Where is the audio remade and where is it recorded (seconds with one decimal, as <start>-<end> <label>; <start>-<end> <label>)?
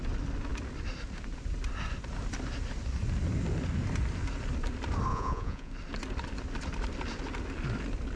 0.0-5.1 recorded; 5.1-5.7 remade; 5.7-8.2 recorded